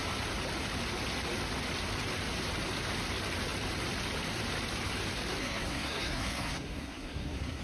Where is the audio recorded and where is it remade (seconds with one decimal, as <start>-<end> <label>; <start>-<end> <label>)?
0.0-5.4 recorded; 5.4-7.6 remade